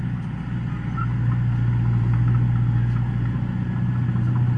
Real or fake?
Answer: real